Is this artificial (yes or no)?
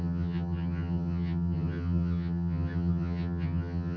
yes